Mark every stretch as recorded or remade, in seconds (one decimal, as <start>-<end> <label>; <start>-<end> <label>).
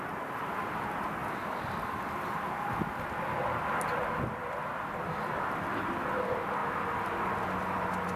0.0-8.2 recorded